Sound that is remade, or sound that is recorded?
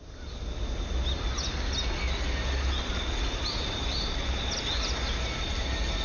recorded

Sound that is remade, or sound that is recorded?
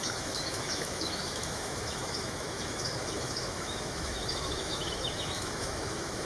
remade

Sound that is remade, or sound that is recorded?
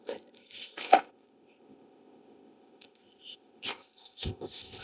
remade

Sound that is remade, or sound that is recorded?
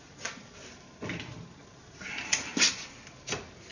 recorded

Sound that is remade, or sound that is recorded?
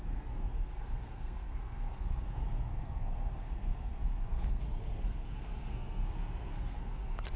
remade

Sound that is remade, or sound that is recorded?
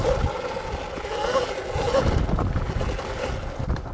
recorded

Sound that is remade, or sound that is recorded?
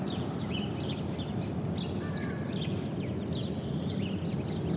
recorded